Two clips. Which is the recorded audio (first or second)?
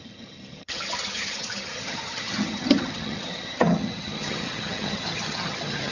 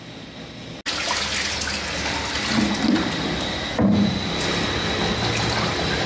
second